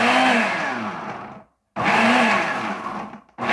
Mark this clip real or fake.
real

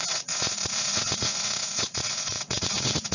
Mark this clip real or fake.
fake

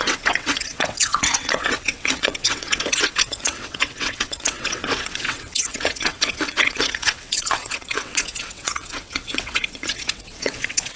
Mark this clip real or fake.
fake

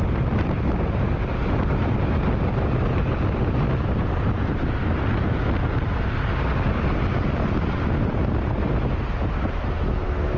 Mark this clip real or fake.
real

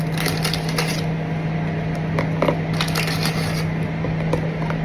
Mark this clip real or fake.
real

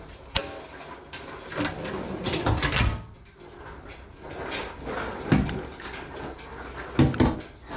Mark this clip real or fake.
real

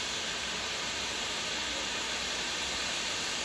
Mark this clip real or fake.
fake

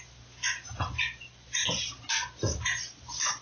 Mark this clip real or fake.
real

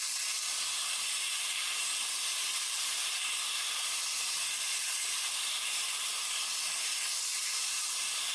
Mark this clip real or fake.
fake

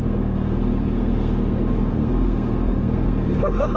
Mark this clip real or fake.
fake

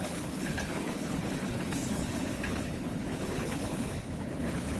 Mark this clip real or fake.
fake